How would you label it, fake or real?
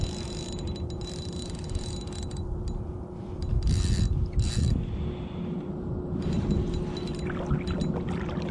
real